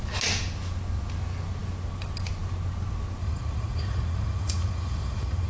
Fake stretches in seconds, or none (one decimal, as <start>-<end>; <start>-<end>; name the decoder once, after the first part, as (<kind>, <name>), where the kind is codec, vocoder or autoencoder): 3.2-5.5 (vocoder, Vocos)